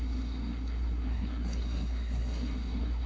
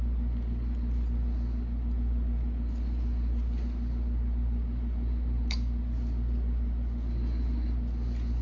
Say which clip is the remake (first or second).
first